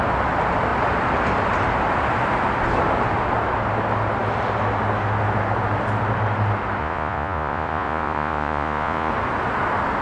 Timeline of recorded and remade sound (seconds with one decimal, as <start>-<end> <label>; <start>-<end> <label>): 0.0-6.8 recorded; 6.8-9.1 remade; 9.1-10.0 recorded